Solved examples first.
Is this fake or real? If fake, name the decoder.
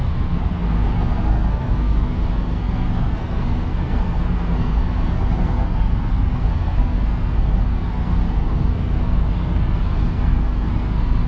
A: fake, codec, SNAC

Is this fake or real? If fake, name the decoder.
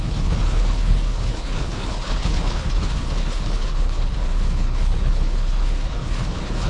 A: fake, codec, HILCodec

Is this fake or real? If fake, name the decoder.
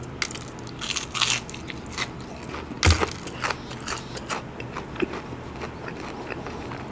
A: real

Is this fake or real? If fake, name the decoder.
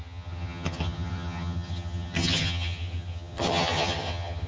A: fake, vocoder, HiFi-GAN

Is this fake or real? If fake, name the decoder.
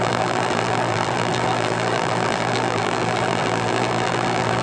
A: fake, vocoder, BigVGAN v2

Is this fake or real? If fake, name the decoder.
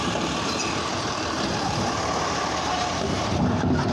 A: fake, vocoder, BigVGAN v2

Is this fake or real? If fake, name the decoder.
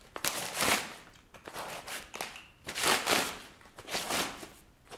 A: real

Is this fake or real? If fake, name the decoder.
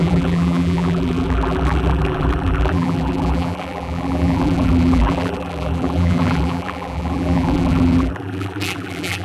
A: fake, vocoder, BigVGAN v2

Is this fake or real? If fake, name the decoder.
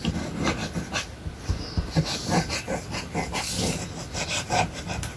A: real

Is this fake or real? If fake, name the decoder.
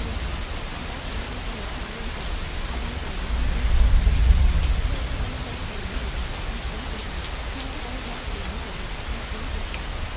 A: real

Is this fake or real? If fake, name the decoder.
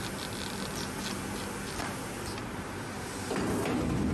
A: real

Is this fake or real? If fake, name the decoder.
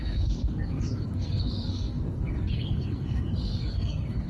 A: fake, codec, SNAC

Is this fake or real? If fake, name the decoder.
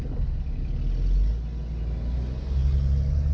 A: real